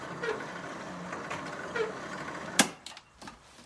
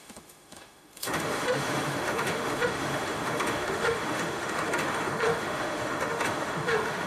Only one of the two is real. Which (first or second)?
first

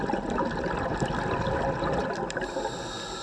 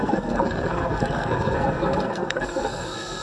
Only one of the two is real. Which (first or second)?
first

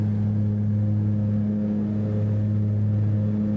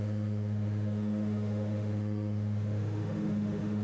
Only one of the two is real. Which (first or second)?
first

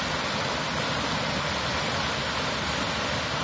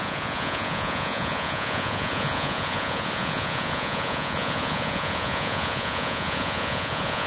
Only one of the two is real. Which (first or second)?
first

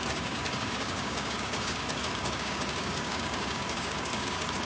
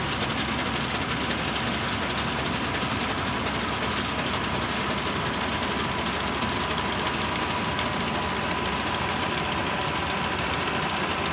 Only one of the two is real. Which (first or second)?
second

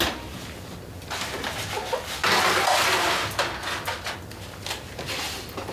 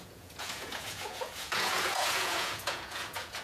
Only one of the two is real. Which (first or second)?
first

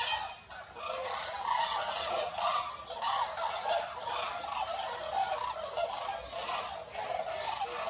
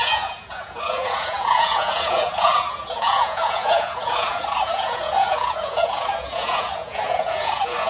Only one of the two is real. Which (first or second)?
first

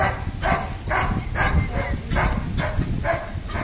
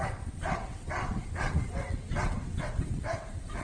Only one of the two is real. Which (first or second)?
first